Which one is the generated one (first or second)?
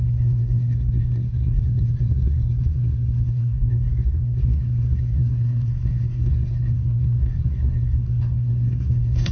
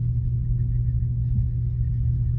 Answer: first